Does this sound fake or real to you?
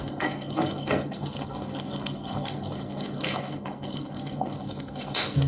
fake